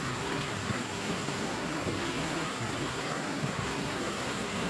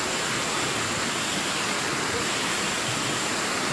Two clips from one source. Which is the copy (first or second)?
first